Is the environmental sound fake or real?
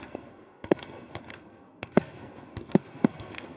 fake